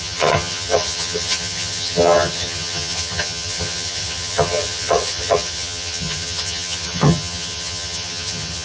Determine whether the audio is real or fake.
fake